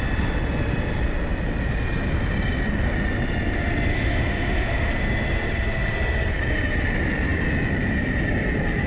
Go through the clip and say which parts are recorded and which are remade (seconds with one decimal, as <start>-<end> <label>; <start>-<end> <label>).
0.0-3.9 recorded; 3.9-4.9 remade; 4.9-8.9 recorded